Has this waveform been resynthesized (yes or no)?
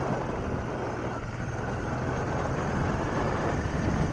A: no